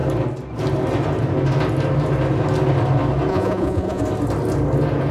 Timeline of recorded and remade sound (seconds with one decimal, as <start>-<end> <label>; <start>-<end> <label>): 0.0-3.3 recorded; 3.3-4.0 remade; 4.0-5.1 recorded